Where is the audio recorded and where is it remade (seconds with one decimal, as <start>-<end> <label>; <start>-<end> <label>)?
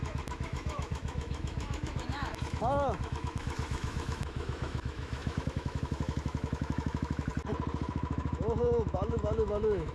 0.0-7.3 remade; 7.3-7.9 recorded; 7.9-9.9 remade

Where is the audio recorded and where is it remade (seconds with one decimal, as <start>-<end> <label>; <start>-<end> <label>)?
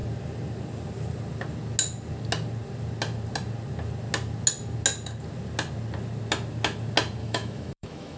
0.0-7.2 recorded; 7.2-8.2 remade